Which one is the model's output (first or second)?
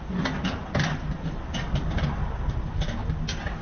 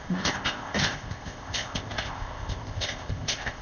second